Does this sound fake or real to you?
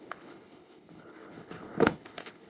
fake